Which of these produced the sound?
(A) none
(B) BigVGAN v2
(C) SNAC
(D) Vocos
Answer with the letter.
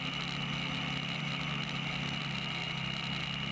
A